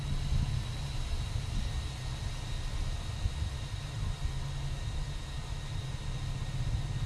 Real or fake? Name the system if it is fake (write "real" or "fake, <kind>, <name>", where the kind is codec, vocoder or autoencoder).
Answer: real